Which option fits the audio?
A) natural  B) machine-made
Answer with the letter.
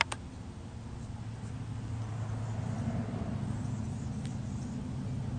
A